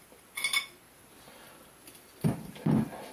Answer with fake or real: real